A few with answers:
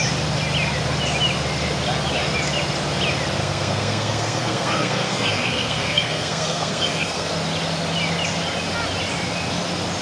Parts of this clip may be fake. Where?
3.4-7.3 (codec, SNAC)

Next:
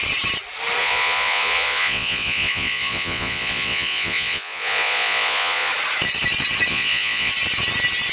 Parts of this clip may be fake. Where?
0.8-5.7 (vocoder, Vocos); 6.7-7.3

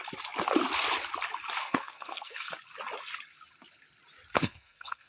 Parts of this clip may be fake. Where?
1.6-2.5 (codec, SNAC); 4.4-5.1

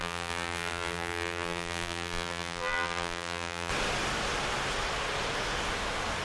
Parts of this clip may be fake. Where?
0.0-3.7 (vocoder, BigVGAN v2)

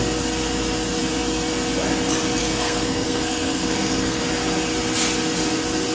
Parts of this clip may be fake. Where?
2.4-4.2 (codec, SNAC)

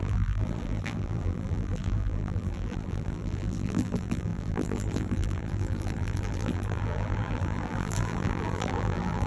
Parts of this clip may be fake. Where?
0.0-9.3 (vocoder, BigVGAN v2)